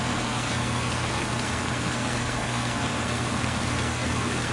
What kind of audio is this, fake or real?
fake